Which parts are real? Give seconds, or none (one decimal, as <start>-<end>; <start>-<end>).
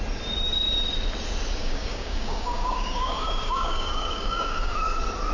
0.0-1.6; 4.8-5.3